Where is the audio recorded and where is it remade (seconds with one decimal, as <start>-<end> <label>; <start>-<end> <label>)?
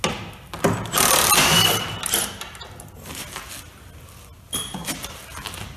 0.0-5.8 recorded